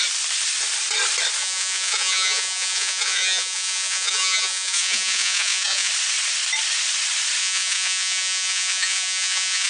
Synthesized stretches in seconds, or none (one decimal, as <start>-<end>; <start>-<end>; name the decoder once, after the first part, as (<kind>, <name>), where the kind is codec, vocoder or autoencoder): 1.4-5.9 (vocoder, Vocos); 7.4-9.7